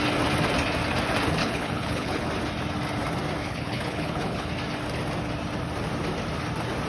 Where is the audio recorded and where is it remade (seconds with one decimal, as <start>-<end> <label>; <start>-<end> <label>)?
0.0-1.4 recorded; 1.4-2.3 remade; 2.3-3.4 recorded; 3.4-4.5 remade; 4.5-6.9 recorded